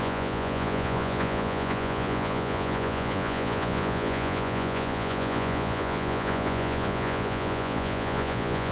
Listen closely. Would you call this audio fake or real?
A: fake